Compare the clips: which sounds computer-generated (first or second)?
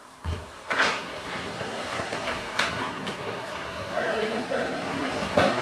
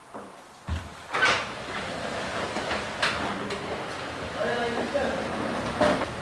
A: first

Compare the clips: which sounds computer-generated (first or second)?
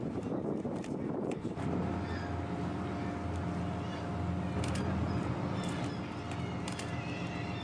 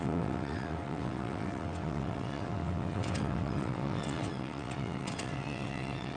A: second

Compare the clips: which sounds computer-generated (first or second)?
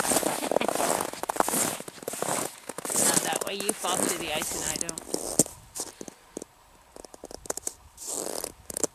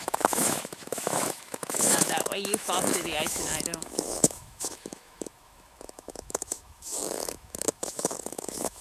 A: second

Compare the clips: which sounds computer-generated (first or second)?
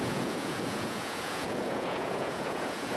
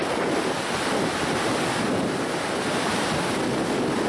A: first